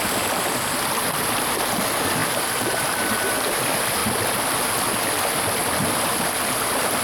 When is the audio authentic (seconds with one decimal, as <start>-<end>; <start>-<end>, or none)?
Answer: 0.0-2.2; 3.1-7.0

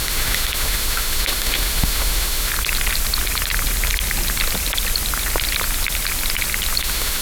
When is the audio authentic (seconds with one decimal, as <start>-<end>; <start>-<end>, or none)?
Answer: 2.5-6.8

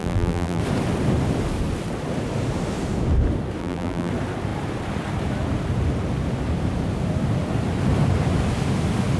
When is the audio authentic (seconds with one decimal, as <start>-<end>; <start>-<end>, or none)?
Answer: 0.6-3.6; 4.1-9.2